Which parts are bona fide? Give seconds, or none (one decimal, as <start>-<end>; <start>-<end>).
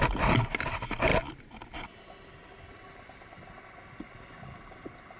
0.0-5.2